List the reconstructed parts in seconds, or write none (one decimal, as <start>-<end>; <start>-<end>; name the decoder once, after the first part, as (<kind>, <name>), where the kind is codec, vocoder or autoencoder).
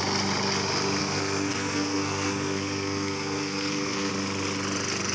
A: 1.0-4.1 (codec, SNAC)